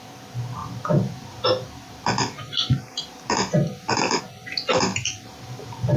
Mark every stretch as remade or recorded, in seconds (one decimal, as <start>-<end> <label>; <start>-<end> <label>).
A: 0.0-0.6 recorded; 0.6-4.2 remade; 4.2-4.9 recorded; 4.9-6.0 remade